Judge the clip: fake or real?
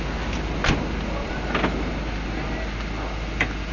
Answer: real